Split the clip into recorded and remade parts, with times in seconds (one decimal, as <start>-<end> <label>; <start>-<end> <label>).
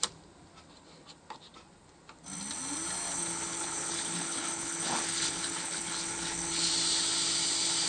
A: 0.0-3.1 recorded; 3.1-6.7 remade; 6.7-7.9 recorded